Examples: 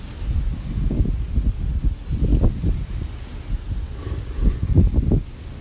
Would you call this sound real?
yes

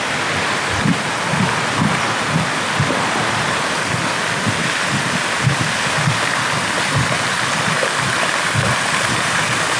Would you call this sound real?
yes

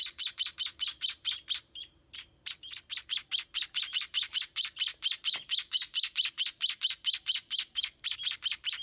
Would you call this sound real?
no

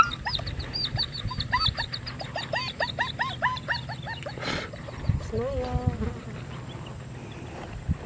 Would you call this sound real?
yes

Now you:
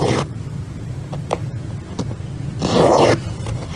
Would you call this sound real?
yes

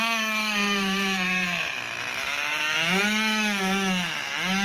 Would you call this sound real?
no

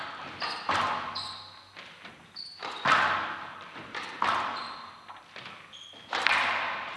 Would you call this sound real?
yes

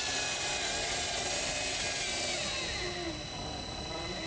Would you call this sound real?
yes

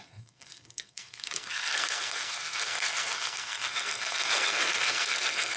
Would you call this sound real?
no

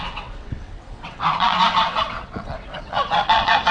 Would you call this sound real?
no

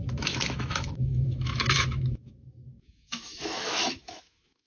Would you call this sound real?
no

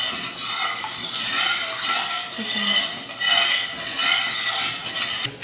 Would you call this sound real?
yes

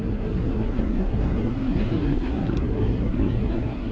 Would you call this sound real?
no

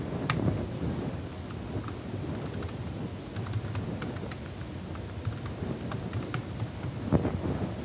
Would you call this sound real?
yes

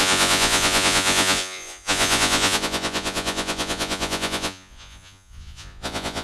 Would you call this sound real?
no